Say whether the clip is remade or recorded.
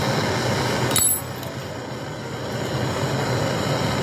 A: recorded